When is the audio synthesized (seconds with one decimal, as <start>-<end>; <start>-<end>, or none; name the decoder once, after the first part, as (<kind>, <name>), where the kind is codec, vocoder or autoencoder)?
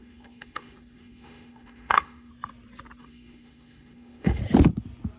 0.0-2.3 (autoencoder, DAC-VAE); 3.0-4.4